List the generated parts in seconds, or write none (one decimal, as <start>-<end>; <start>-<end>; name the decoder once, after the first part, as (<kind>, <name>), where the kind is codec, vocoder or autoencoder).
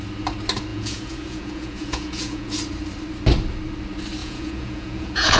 0.7-2.5 (vocoder, Vocos); 4.2-5.4